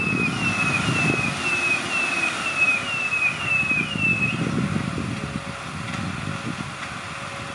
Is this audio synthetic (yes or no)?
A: no